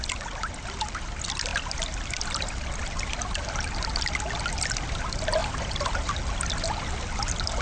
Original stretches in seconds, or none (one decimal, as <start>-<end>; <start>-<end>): 0.0-5.4; 6.1-7.6